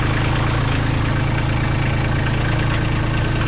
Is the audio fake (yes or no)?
no